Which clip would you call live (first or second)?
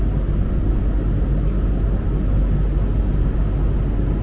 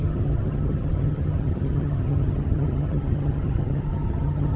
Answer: first